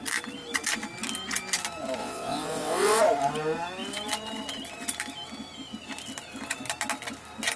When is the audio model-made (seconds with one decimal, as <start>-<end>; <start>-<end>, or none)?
2.0-3.0